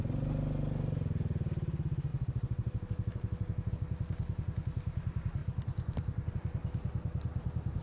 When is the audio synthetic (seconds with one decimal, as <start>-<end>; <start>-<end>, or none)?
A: 2.1-3.7